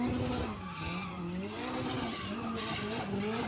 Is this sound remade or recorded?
recorded